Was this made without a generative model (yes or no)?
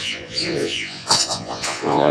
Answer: no